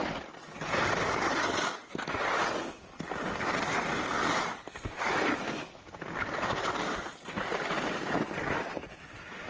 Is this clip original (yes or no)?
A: yes